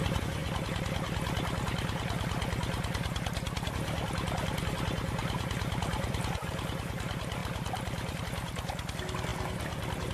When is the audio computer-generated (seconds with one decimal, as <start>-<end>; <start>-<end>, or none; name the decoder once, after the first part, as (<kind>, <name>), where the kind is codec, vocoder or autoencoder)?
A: 5.2-6.2 (vocoder, BigVGAN v2); 7.4-8.2